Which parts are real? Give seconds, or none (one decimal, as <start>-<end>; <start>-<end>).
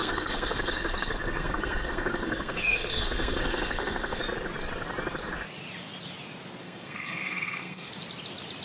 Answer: 4.2-6.6; 7.9-8.6